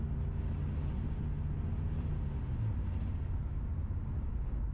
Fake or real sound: real